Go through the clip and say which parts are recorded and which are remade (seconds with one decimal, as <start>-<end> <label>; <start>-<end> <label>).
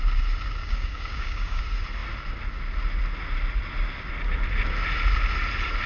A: 0.0-0.6 recorded; 0.6-1.6 remade; 1.6-5.9 recorded